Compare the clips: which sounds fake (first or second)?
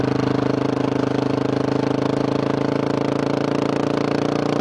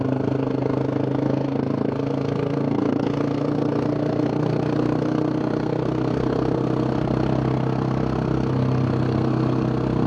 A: second